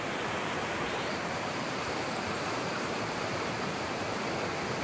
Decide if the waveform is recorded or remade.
remade